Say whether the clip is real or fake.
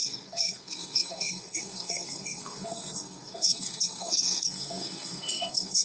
fake